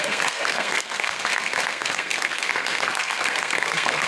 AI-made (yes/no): yes